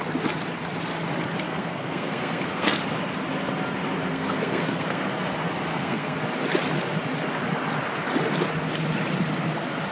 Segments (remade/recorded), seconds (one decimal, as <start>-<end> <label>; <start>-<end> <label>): 0.0-1.5 recorded; 1.5-2.8 remade; 2.8-4.1 recorded; 4.1-5.1 remade; 5.1-5.7 recorded; 5.7-6.2 remade; 6.2-9.9 recorded